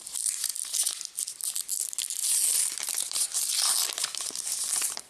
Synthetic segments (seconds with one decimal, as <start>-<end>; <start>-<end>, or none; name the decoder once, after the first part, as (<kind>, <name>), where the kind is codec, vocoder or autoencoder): 0.0-0.5 (vocoder, BigVGAN v2); 2.5-5.1